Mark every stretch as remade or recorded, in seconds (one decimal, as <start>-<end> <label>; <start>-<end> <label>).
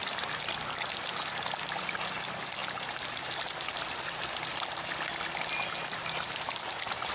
0.0-2.6 recorded; 2.6-4.2 remade; 4.2-6.0 recorded; 6.0-7.1 remade